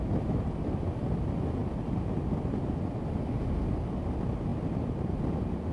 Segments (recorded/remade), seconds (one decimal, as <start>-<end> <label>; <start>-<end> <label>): 0.0-5.7 recorded